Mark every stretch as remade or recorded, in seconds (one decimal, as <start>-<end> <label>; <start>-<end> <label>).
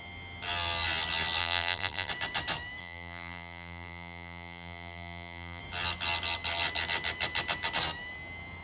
0.0-1.4 recorded; 1.4-2.1 remade; 2.1-2.8 recorded; 2.8-5.6 remade; 5.6-8.6 recorded